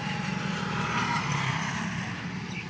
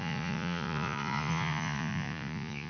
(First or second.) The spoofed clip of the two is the second